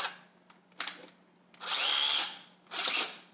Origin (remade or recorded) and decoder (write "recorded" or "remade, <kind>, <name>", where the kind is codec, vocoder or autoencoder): recorded